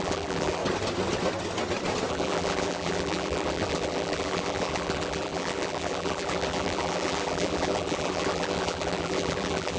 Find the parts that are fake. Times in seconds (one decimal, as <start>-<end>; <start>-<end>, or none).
0.0-0.6; 2.1-9.8